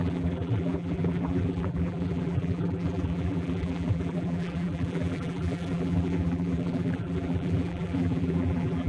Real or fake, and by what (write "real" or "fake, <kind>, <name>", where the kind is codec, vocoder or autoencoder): fake, vocoder, BigVGAN v2